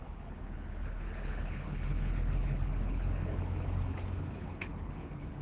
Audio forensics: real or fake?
fake